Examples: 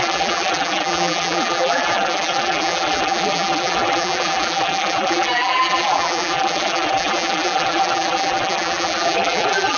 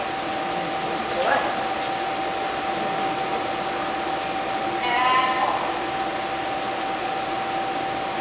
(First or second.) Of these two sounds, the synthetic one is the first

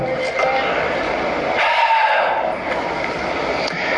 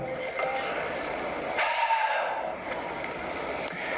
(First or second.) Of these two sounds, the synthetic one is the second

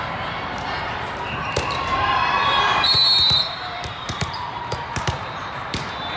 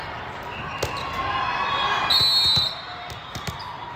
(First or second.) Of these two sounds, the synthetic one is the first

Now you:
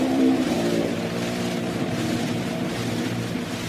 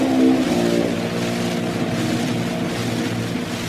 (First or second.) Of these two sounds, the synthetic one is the first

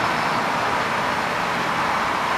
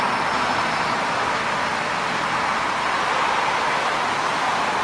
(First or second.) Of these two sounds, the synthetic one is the first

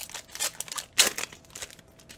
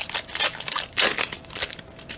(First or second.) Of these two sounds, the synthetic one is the second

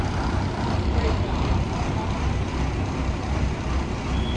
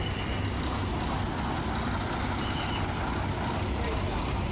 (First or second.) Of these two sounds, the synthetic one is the first